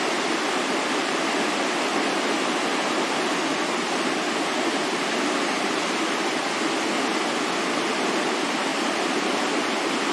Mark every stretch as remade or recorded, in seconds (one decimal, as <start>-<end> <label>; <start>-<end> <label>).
0.0-1.0 recorded; 1.0-1.9 remade; 1.9-8.7 recorded; 8.7-9.6 remade; 9.6-10.1 recorded